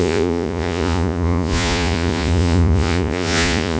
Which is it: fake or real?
fake